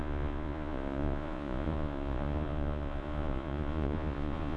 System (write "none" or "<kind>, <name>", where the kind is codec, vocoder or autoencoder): vocoder, Vocos